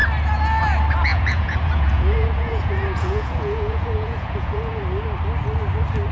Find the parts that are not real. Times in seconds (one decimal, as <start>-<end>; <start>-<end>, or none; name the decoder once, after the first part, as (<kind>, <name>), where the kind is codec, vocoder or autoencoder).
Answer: 1.1-4.8 (vocoder, Vocos)